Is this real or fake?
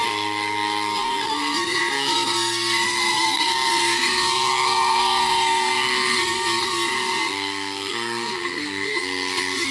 fake